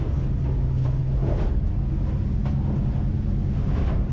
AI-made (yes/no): no